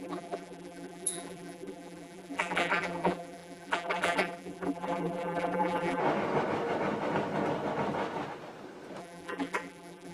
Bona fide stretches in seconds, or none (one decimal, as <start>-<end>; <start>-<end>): 6.0-9.0